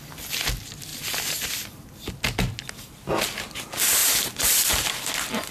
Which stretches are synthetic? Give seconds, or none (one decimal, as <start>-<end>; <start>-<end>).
0.9-1.5; 4.0-5.1